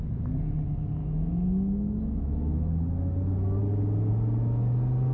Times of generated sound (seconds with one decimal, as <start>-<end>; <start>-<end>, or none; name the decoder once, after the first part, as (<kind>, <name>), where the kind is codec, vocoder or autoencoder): 1.0-2.7 (autoencoder, DAC-VAE)